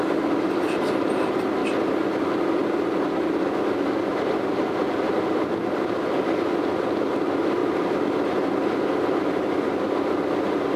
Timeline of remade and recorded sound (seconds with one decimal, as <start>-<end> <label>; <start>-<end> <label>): 0.0-10.8 recorded